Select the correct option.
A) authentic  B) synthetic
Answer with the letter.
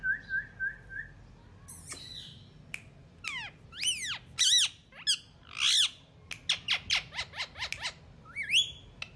A